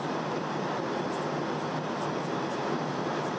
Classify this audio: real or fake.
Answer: real